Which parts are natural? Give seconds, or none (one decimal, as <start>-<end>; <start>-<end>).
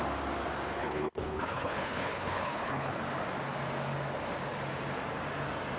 0.0-0.8; 3.0-5.8